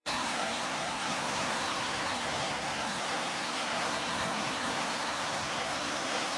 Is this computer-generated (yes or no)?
yes